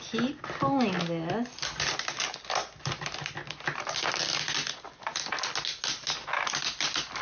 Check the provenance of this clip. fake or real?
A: real